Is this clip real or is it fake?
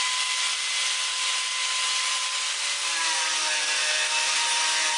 fake